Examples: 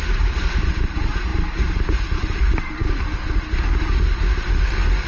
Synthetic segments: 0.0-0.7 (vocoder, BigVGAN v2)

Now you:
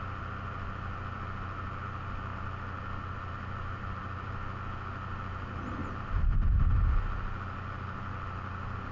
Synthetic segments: none

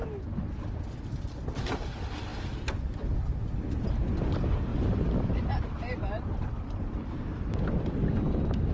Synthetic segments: none